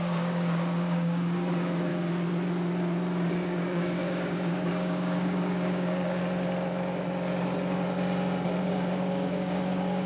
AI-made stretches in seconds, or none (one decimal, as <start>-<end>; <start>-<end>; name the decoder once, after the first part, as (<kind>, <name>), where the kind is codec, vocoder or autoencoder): 0.0-1.9 (codec, DAC); 3.3-6.2; 8.6-10.1